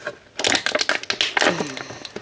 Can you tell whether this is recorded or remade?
recorded